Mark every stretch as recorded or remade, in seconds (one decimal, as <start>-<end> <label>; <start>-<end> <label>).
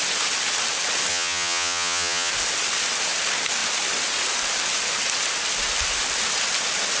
0.0-1.1 recorded; 1.1-2.3 remade; 2.3-7.0 recorded